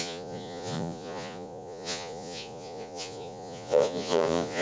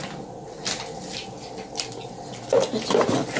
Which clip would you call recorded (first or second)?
second